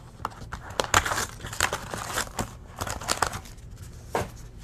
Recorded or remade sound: recorded